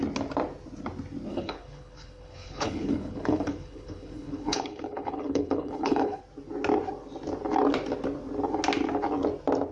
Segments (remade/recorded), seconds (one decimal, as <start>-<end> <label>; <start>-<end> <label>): 0.0-1.3 recorded; 1.3-6.2 remade; 6.2-9.7 recorded